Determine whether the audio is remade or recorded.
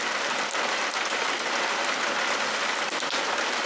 recorded